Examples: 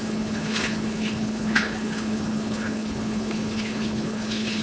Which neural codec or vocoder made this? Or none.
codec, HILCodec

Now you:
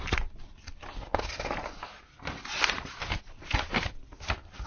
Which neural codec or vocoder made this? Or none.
none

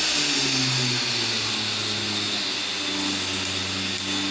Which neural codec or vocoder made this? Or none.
none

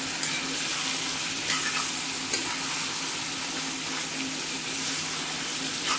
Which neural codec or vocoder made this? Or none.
none